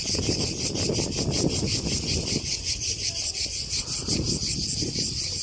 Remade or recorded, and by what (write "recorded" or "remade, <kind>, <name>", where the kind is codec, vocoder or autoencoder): recorded